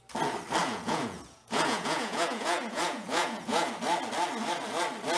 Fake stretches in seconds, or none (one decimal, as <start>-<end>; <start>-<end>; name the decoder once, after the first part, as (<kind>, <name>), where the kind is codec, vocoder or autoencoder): 0.6-3.7 (vocoder, Vocos)